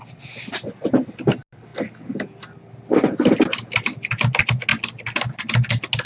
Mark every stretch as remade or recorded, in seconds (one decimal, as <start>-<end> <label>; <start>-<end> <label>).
0.0-6.1 recorded